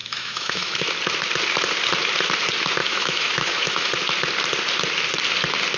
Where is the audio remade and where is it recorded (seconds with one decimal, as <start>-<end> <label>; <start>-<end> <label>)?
0.0-0.9 remade; 0.9-2.8 recorded; 2.8-3.9 remade; 3.9-5.8 recorded